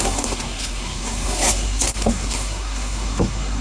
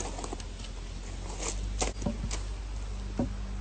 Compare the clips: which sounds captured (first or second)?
second